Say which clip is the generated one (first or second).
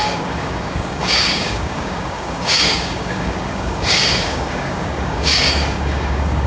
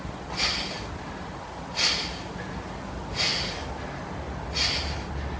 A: first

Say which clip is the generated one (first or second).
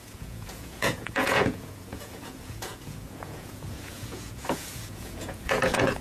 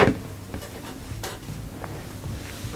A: first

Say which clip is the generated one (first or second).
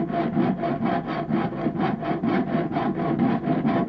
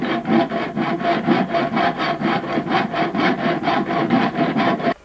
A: second